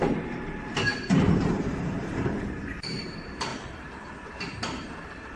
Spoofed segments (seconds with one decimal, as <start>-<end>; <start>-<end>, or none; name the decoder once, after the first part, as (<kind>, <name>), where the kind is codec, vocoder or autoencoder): 0.9-3.0 (vocoder, BigVGAN v2); 3.5-4.3